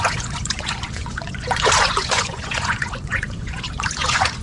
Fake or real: fake